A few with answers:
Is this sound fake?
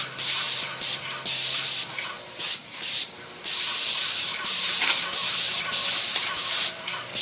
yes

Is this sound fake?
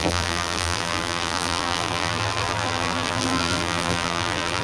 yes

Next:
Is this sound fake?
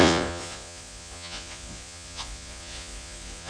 yes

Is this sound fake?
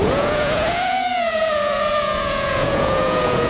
yes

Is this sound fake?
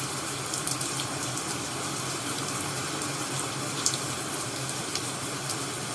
no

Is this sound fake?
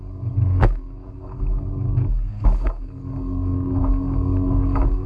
yes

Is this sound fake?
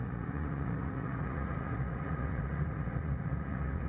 yes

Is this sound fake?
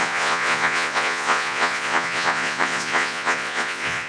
yes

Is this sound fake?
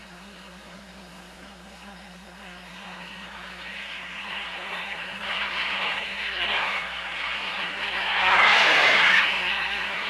yes